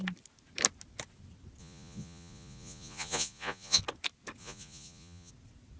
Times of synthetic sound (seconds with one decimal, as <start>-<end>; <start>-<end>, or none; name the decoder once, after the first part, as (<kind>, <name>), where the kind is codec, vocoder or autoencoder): 1.6-3.8 (vocoder, Vocos); 4.4-5.3

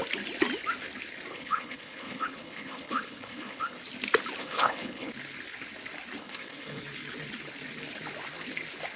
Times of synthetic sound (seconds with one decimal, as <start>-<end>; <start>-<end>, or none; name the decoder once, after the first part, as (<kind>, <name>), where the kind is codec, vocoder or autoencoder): 1.3-3.8 (codec, HILCodec); 4.4-5.1; 6.2-6.8

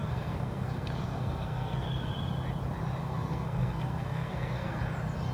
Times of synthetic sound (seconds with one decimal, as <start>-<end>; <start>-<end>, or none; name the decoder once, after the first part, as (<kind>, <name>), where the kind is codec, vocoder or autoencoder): 0.0-2.1 (codec, SNAC); 3.0-4.8

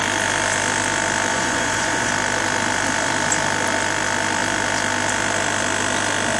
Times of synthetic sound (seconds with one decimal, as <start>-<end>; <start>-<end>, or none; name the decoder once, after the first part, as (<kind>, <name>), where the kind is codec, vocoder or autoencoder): 1.3-2.1 (vocoder, Vocos)

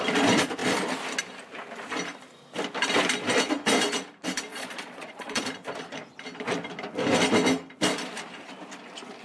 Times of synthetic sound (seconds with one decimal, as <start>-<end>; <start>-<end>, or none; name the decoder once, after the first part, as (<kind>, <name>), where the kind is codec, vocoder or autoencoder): 4.5-5.4 (vocoder, Vocos)

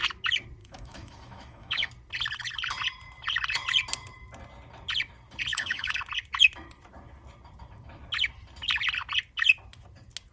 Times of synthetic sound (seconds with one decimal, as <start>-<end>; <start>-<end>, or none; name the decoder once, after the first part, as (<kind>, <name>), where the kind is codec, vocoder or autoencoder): 0.6-1.9 (autoencoder, DAC-VAE); 5.5-6.0

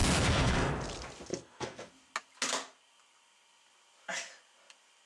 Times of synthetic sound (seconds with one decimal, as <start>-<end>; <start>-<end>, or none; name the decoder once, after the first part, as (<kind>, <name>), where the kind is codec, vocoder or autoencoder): 0.0-0.7 (codec, SNAC); 1.3-1.9

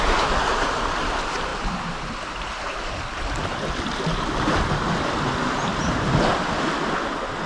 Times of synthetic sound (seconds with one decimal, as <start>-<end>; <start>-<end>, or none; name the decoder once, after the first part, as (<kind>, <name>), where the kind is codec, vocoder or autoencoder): 1.5-2.2 (vocoder, BigVGAN v2); 5.7-6.7